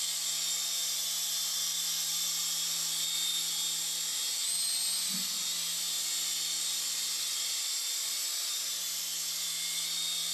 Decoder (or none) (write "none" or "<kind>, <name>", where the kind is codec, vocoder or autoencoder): none